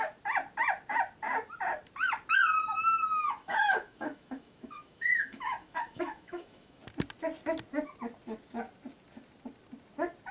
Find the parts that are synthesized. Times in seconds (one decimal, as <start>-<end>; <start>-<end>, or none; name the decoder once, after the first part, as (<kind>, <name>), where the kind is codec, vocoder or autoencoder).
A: 2.6-6.8 (autoencoder, DAC-VAE)